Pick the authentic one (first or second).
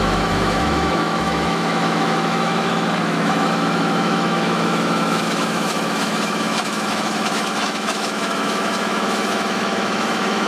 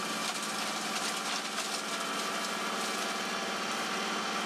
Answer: second